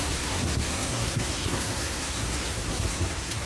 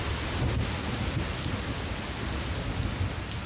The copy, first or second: first